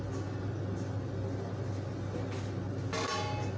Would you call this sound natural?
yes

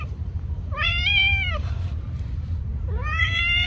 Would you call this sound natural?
no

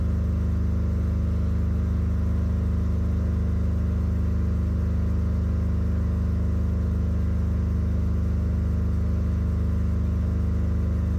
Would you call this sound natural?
yes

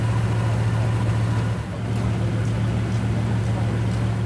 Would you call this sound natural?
yes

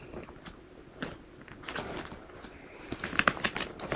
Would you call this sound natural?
yes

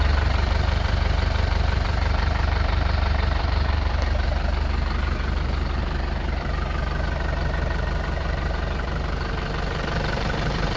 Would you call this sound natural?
no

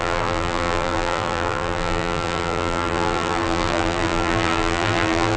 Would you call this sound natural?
no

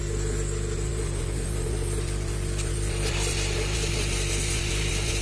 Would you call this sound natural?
yes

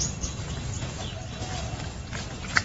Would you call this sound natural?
yes